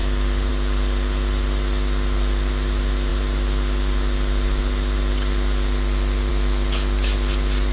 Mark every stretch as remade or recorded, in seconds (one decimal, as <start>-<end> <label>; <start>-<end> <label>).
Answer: 0.0-7.7 recorded